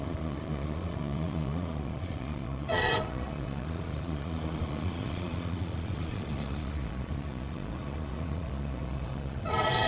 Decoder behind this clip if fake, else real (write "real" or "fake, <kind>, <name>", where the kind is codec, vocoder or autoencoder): fake, vocoder, Vocos